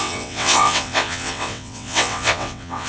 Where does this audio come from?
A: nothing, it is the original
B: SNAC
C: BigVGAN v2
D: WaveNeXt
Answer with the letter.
D